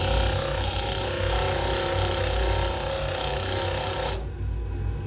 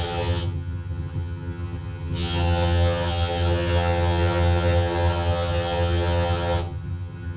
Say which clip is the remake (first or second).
second